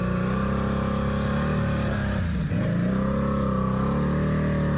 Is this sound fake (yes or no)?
no